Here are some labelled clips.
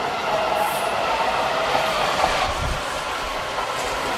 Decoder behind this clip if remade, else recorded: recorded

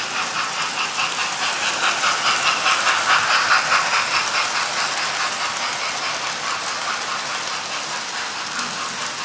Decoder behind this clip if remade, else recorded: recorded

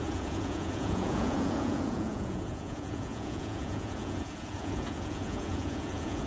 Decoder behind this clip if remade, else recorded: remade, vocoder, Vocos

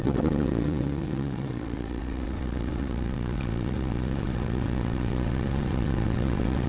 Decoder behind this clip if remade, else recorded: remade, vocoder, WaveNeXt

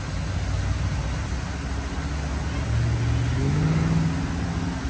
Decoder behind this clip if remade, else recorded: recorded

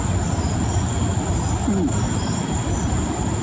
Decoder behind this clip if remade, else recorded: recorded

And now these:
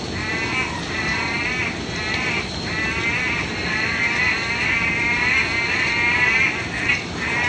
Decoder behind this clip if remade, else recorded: recorded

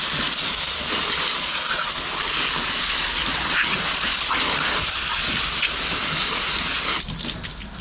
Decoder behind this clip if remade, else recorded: recorded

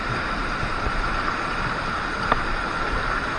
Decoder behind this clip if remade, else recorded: recorded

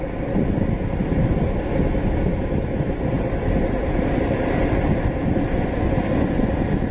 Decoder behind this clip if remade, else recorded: recorded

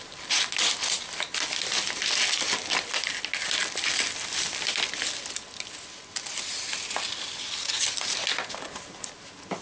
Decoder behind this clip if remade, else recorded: recorded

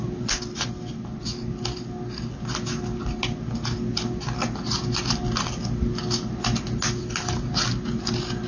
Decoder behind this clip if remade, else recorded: recorded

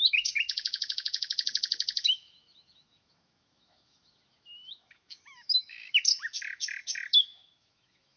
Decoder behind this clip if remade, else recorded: remade, autoencoder, DAC-VAE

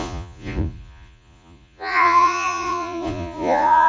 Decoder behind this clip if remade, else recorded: remade, vocoder, Vocos